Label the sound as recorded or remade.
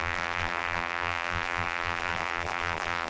remade